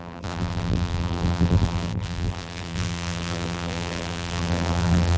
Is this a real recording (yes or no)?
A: no